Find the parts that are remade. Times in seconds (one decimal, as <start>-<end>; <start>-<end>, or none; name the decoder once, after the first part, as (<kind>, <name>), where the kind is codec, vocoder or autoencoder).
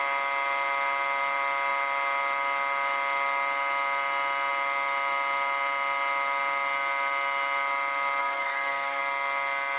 8.2-9.0 (codec, SNAC)